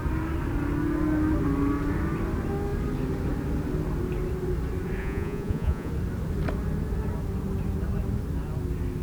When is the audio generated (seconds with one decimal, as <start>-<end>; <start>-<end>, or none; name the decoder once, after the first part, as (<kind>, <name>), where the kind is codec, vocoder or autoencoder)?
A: 5.0-5.9 (vocoder, Vocos)